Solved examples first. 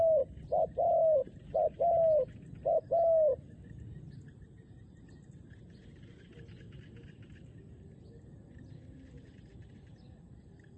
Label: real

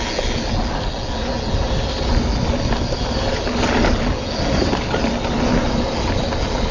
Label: real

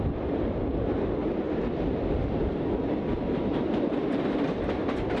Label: real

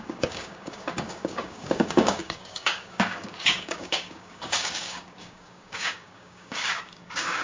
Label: fake